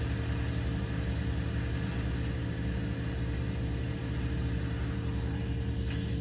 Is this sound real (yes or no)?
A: yes